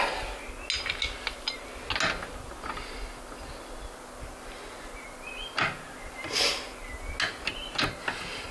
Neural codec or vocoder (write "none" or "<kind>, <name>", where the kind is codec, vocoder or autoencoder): none